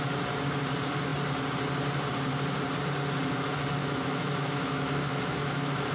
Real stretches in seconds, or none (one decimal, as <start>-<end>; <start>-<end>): 0.0-3.8